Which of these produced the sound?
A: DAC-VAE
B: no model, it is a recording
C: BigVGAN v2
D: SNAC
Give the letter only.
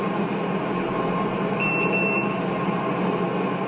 B